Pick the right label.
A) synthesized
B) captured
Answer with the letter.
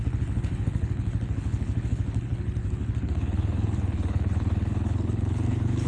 A